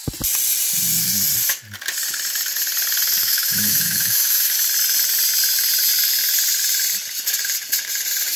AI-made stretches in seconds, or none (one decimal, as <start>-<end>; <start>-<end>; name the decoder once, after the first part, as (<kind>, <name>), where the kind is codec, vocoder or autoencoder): 3.2-4.5 (autoencoder, DAC-VAE)